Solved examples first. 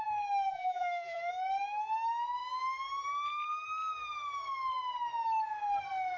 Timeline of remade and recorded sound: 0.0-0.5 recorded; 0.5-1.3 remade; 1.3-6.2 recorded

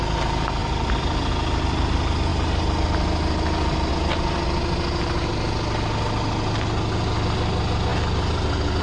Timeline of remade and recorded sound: 0.0-0.6 recorded; 0.6-1.3 remade; 1.3-8.8 recorded